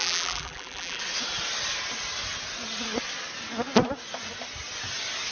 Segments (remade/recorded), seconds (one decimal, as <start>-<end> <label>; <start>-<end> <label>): 0.0-1.0 remade; 1.0-5.3 recorded